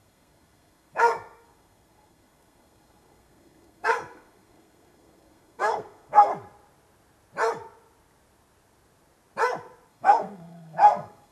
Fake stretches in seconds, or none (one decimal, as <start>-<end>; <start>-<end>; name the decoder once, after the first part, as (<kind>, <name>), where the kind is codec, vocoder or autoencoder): 0.0-6.3 (codec, SNAC); 9.9-11.3